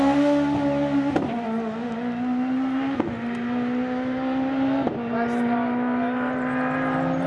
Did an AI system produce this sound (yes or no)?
no